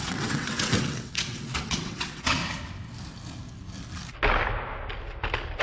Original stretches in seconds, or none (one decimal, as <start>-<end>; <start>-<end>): 2.4-5.6